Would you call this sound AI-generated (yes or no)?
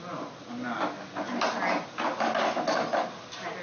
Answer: no